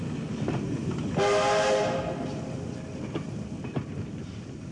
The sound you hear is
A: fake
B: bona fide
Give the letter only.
B